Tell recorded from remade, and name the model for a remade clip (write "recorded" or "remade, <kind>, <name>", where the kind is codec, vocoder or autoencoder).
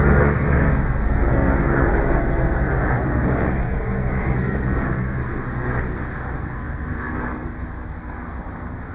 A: remade, codec, SNAC